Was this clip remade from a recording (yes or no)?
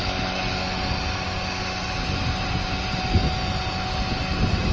no